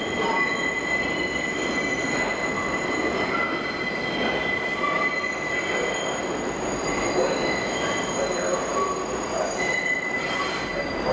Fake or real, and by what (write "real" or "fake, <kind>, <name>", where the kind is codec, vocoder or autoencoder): real